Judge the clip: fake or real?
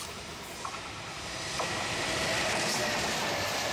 fake